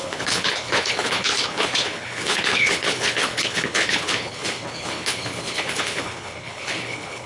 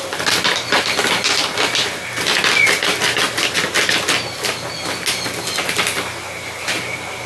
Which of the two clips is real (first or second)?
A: second